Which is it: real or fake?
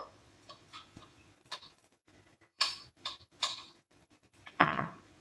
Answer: fake